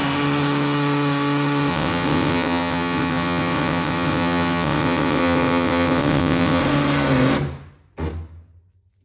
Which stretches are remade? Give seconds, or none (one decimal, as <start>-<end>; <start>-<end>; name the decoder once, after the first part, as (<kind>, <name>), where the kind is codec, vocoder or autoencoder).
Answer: 1.7-6.6 (vocoder, WaveNeXt)